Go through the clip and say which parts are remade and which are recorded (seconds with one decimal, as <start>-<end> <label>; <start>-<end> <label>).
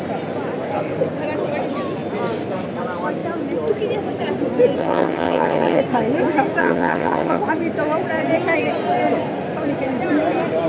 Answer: 0.0-4.8 recorded; 4.8-5.8 remade; 5.8-6.6 recorded; 6.6-7.4 remade; 7.4-10.7 recorded